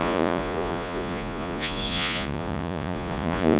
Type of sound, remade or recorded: remade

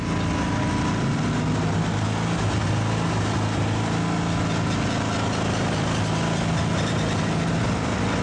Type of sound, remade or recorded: recorded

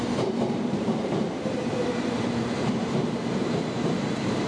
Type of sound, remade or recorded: remade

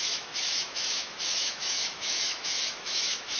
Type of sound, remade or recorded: remade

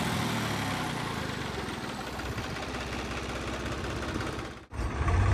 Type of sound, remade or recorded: recorded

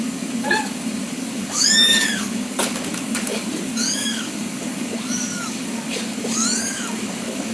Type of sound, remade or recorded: remade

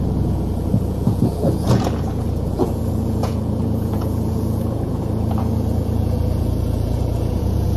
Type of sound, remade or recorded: remade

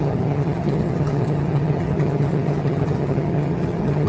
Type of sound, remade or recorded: remade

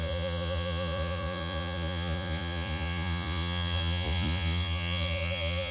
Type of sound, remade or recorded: remade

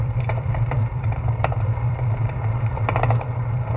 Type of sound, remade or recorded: remade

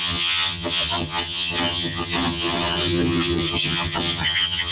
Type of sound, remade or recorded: remade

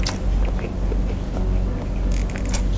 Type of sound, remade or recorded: recorded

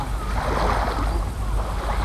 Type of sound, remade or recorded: recorded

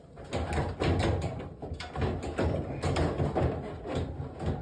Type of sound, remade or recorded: recorded